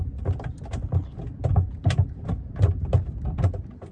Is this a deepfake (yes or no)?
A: no